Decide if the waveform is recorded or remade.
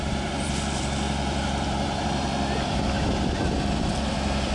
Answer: remade